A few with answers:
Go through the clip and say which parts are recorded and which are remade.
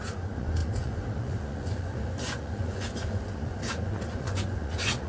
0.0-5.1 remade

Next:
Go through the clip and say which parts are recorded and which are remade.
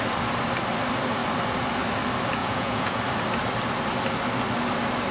0.0-2.4 recorded; 2.4-3.0 remade; 3.0-5.1 recorded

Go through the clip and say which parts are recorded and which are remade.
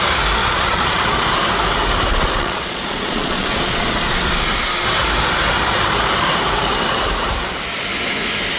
0.0-0.4 recorded; 0.4-1.0 remade; 1.0-2.1 recorded; 2.1-4.3 remade; 4.3-8.6 recorded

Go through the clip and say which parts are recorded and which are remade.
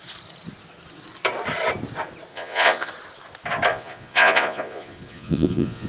0.0-2.3 recorded; 2.3-2.9 remade; 2.9-3.7 recorded; 3.7-5.9 remade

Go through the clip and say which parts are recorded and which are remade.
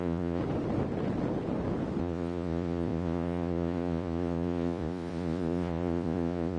0.0-0.4 remade; 0.4-2.0 recorded; 2.0-6.6 remade